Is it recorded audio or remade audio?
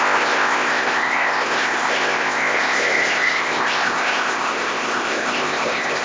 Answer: remade